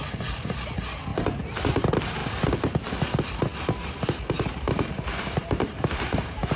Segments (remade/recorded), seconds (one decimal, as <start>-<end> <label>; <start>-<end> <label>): 0.0-2.2 remade; 2.2-3.1 recorded; 3.1-6.6 remade